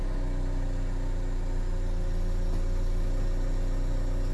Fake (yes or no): no